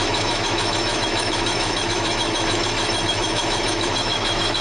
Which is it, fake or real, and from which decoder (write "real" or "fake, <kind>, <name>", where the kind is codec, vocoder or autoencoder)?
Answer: fake, autoencoder, DAC-VAE